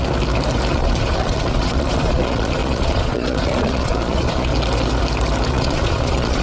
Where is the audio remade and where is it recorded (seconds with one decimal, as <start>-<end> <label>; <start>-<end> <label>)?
0.0-0.7 recorded; 0.7-4.5 remade; 4.5-5.5 recorded; 5.5-6.4 remade